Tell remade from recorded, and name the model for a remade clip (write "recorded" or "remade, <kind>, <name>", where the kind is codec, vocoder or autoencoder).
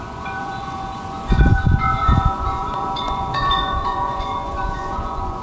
remade, vocoder, Vocos